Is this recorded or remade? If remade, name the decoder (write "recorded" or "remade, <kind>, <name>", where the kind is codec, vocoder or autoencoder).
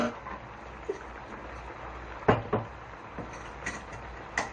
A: recorded